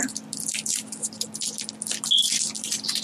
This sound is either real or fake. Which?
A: real